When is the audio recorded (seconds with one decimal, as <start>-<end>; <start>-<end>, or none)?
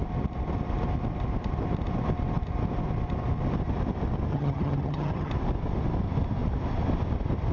0.0-4.3; 5.3-7.5